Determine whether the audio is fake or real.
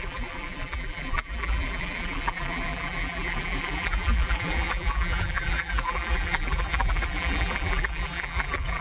fake